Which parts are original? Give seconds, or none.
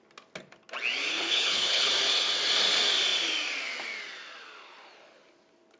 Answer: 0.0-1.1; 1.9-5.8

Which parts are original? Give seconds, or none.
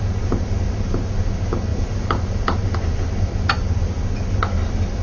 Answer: 0.0-5.0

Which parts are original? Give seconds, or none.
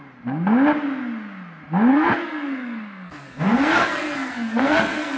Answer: 0.0-1.9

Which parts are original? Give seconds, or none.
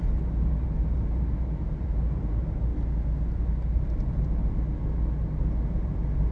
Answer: 2.7-3.7; 4.4-5.7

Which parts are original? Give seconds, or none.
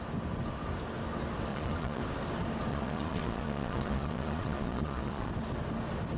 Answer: 0.0-1.5; 2.0-2.7; 5.3-6.2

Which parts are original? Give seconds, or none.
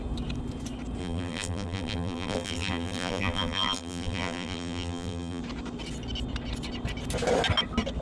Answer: 0.0-1.0; 5.4-8.0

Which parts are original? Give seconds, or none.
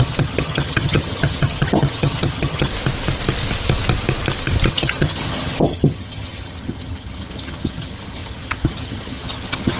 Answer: 2.7-4.7